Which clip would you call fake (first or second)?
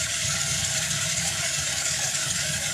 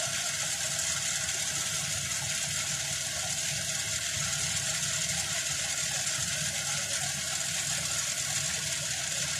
first